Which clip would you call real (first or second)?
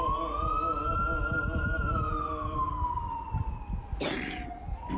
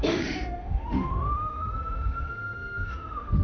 first